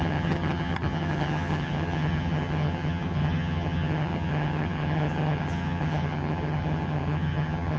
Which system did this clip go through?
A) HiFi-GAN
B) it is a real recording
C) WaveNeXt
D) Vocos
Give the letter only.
A